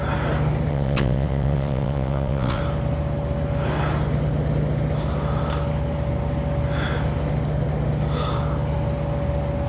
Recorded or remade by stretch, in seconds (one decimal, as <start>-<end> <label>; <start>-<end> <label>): 0.0-0.7 recorded; 0.7-2.6 remade; 2.6-9.7 recorded